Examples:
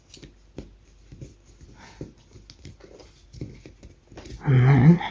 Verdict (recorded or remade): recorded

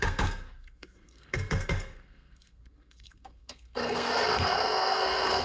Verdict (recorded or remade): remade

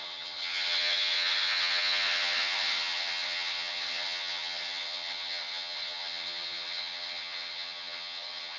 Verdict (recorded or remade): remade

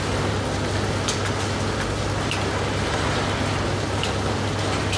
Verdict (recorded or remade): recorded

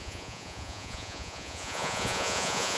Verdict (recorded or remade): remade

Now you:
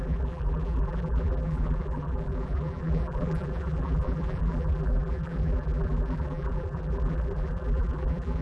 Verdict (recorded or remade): remade